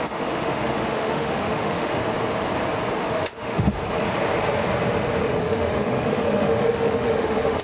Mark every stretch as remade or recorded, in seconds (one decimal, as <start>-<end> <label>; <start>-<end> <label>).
0.0-2.0 remade; 2.0-2.9 recorded; 2.9-3.8 remade; 3.8-5.4 recorded; 5.4-7.6 remade